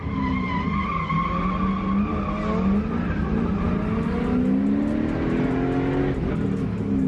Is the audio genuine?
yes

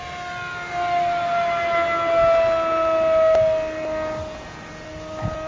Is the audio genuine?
yes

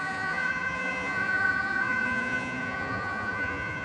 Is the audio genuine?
no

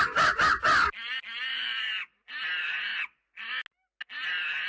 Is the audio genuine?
yes